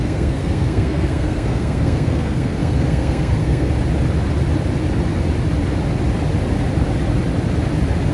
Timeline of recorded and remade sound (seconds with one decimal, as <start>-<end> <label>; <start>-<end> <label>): 0.0-3.7 remade; 3.7-8.1 recorded